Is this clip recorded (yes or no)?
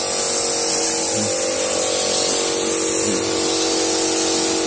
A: yes